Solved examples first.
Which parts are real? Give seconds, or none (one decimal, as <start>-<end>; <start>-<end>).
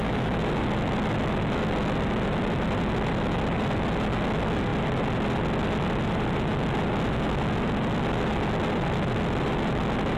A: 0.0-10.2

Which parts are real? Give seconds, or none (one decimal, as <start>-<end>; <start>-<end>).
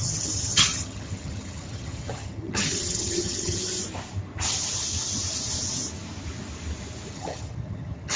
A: 3.6-7.1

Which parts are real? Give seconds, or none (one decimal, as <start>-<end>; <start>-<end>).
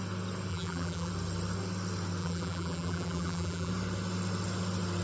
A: 0.0-0.5; 1.1-2.2; 3.7-5.0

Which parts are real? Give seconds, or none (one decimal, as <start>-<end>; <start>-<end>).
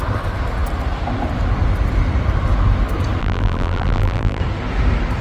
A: 0.0-3.2; 4.4-5.2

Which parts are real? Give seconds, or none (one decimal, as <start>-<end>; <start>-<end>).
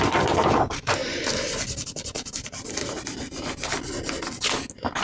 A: 0.0-5.0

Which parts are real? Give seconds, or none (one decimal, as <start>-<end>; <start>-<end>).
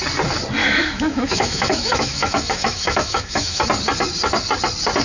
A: 0.0-0.6; 3.6-5.0